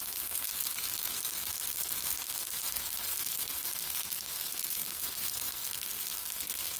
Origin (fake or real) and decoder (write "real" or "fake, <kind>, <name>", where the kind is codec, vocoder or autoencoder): fake, codec, SNAC